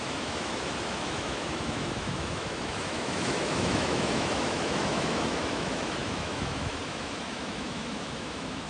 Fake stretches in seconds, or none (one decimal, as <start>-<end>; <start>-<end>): 0.0-8.7